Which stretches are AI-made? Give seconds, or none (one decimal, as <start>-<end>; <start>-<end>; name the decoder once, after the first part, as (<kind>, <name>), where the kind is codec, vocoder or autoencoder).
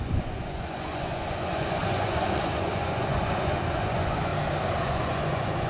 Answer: 0.0-4.3 (vocoder, Vocos); 4.8-5.7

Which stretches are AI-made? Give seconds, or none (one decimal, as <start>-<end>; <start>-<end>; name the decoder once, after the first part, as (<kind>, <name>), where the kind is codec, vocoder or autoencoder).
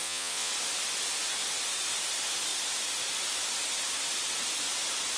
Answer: 0.0-0.5 (vocoder, Vocos)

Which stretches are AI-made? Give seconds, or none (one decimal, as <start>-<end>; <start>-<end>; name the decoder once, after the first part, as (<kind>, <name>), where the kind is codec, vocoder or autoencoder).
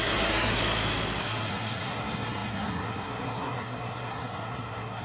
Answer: 0.0-0.6 (codec, SNAC); 1.2-5.0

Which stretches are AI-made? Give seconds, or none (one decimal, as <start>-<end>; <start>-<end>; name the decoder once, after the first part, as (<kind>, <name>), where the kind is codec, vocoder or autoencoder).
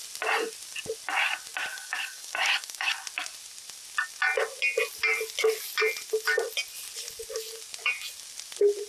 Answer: 1.7-2.9 (codec, DAC)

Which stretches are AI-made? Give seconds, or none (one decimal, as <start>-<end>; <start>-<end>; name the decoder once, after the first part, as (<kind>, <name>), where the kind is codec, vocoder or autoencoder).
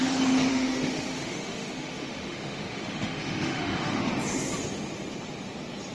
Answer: 0.5-4.0 (autoencoder, DAC-VAE)